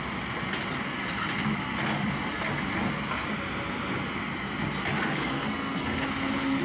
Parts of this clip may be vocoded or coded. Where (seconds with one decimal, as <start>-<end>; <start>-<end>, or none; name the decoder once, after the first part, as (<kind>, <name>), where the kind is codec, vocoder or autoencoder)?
5.1-6.0 (codec, SNAC)